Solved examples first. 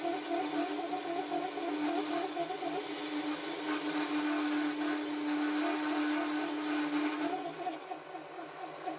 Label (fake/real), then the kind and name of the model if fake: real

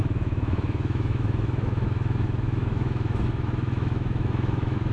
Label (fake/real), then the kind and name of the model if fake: fake, autoencoder, DAC-VAE